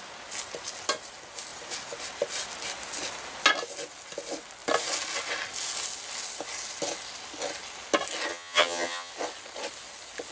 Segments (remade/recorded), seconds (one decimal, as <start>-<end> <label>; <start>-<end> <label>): 0.0-8.3 recorded; 8.3-9.1 remade; 9.1-10.3 recorded